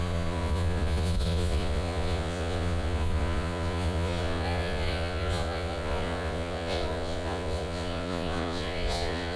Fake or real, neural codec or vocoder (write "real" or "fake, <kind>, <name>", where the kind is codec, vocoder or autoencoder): fake, vocoder, Vocos